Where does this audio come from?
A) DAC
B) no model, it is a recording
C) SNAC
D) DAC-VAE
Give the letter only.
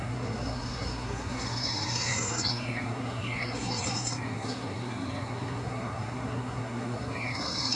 C